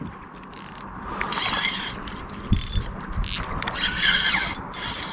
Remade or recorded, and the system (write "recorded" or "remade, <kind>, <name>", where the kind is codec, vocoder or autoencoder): recorded